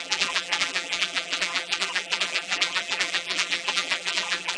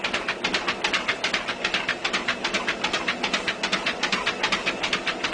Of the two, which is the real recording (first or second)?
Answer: second